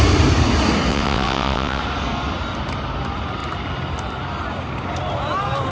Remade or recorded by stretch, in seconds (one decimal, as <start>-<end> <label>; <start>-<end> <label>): 0.0-0.9 recorded; 0.9-1.8 remade; 1.8-5.7 recorded